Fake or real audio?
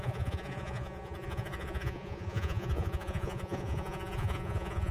fake